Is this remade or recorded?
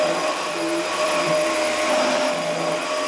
remade